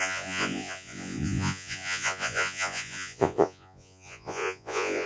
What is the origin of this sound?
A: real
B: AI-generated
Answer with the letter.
B